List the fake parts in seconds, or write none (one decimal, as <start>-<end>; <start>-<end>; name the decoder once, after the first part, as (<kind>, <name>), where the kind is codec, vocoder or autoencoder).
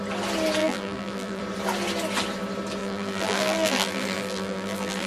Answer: 0.6-1.4 (vocoder, BigVGAN v2); 2.8-5.1